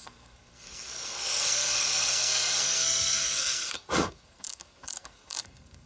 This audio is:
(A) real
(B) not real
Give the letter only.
B